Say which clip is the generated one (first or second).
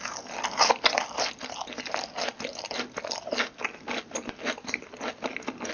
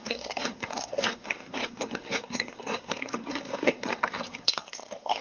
second